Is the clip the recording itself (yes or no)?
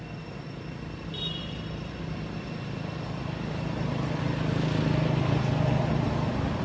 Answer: yes